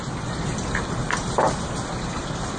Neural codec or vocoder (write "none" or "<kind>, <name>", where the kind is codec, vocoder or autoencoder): none